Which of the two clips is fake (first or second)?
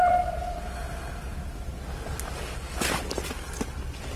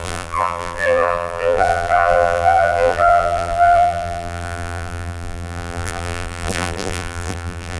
second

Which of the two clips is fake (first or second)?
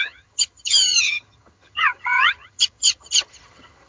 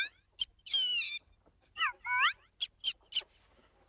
first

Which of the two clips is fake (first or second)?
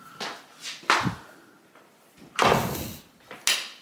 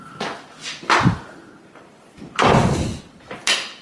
second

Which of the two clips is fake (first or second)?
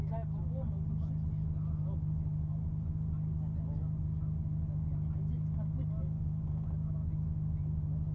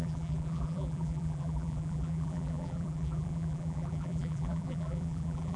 second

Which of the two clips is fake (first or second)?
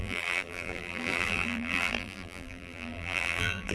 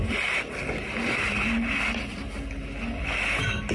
first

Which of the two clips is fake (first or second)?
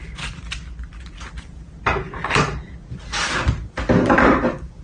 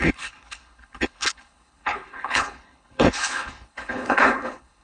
second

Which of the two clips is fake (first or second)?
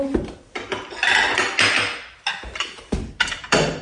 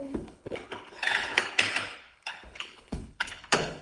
second